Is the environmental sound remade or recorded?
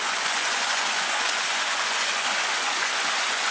remade